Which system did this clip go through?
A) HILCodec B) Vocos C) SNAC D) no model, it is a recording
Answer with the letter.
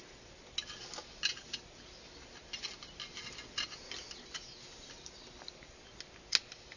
D